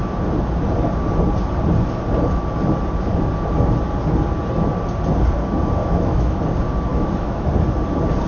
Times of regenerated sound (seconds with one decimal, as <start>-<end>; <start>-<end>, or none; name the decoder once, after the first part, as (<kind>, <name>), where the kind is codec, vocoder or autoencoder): 5.8-6.4 (autoencoder, DAC-VAE); 6.9-7.5